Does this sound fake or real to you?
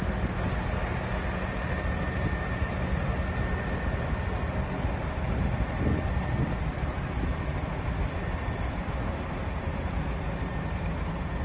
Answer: real